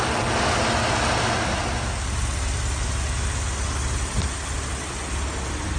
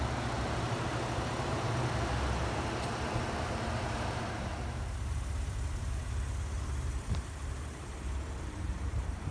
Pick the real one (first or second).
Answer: first